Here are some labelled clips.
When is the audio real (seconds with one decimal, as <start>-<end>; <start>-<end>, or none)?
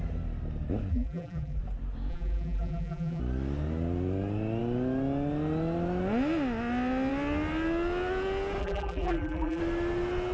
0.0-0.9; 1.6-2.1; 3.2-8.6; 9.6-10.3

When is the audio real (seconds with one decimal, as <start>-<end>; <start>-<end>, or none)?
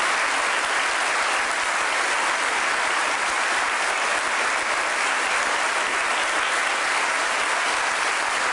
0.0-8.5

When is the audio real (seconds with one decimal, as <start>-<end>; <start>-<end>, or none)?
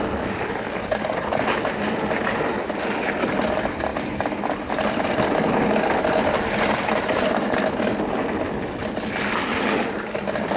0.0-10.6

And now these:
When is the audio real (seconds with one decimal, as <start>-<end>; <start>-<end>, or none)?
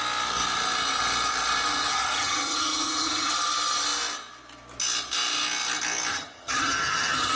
0.0-1.9; 3.3-6.1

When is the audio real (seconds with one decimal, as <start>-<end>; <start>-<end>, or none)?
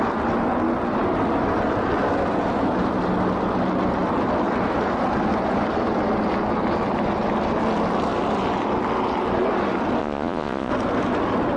0.0-10.0; 10.7-11.6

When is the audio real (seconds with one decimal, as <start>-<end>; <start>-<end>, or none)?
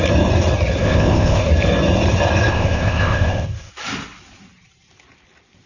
0.0-0.8; 1.5-2.5; 3.7-5.7